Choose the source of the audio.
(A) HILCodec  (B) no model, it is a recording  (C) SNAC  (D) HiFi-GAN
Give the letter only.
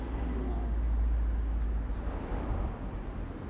B